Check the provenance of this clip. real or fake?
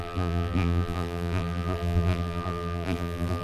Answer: fake